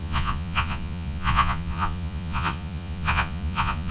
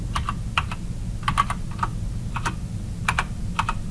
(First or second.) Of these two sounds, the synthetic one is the first